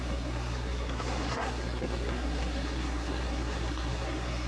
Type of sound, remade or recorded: remade